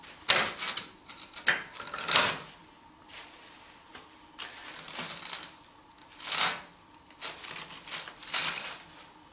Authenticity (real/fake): real